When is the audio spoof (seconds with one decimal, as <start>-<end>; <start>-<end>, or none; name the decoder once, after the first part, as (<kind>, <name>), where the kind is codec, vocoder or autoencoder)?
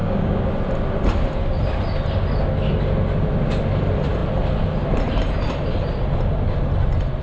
0.0-0.5 (codec, DAC)